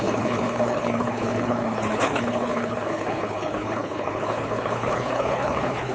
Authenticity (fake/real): fake